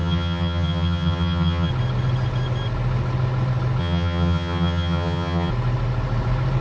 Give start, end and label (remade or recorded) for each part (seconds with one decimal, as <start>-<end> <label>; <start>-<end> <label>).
0.0-1.7 remade; 1.7-3.8 recorded; 3.8-5.5 remade; 5.5-6.6 recorded